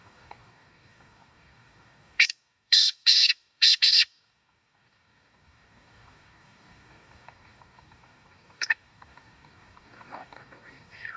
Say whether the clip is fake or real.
fake